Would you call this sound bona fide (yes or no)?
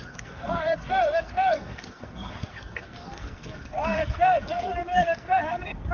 no